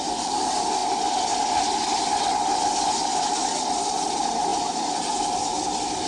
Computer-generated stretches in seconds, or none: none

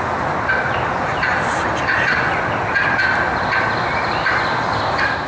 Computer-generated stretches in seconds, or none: none

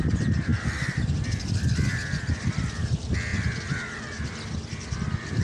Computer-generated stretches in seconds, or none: none

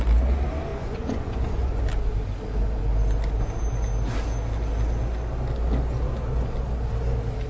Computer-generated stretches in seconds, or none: 0.7-1.8

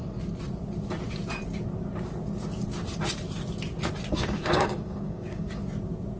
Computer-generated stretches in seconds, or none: 4.1-5.6